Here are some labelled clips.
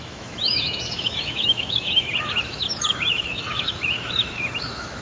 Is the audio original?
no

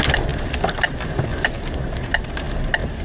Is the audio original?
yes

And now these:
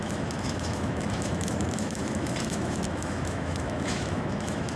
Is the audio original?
no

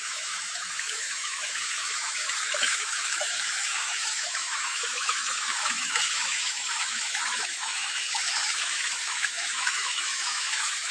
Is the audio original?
no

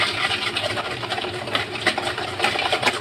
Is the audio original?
yes